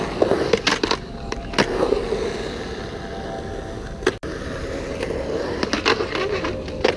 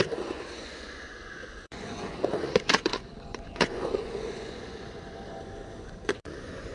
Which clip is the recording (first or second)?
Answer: first